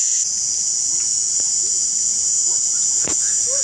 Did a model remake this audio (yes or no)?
yes